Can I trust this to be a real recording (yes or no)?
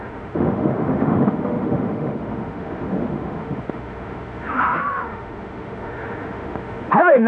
no